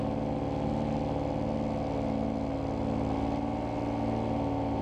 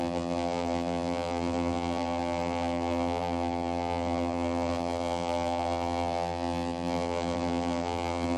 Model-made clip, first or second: second